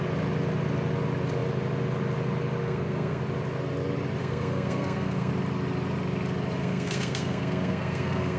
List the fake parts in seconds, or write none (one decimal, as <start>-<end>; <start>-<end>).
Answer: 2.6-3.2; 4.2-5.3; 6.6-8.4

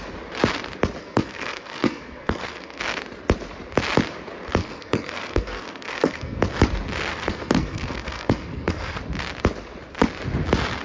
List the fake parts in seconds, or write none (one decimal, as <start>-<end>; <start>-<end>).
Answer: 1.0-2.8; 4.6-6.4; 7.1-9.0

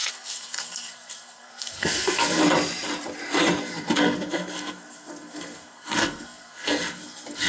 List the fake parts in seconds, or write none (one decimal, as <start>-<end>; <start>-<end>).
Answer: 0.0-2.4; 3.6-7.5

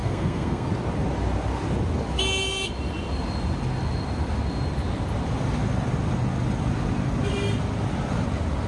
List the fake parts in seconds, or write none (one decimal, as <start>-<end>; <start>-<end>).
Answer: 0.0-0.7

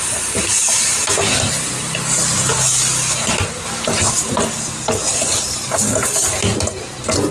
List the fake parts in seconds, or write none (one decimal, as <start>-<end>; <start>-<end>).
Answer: none